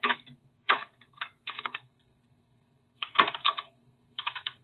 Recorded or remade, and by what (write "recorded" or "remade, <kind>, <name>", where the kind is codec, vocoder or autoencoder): remade, codec, SNAC